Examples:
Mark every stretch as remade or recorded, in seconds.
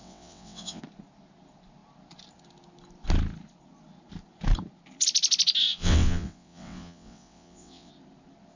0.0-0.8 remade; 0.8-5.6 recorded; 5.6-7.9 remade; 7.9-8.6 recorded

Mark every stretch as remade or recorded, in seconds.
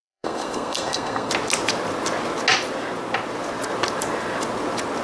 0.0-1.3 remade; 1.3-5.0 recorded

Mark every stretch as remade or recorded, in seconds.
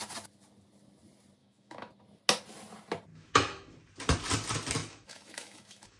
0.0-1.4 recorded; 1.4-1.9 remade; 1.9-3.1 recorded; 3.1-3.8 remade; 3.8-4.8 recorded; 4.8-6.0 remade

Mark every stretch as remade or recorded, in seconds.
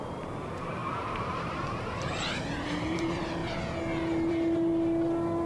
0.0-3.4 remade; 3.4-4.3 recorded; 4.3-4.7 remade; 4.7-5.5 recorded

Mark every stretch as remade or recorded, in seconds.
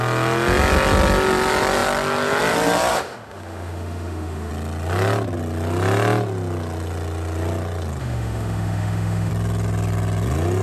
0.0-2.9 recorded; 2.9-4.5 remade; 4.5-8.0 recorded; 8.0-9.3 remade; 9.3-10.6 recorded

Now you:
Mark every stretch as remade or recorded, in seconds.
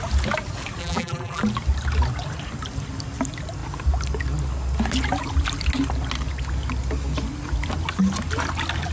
0.0-0.8 recorded; 0.8-1.4 remade; 1.4-8.9 recorded